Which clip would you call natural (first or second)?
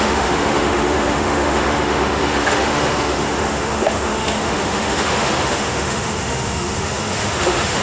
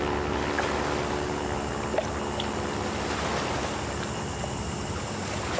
second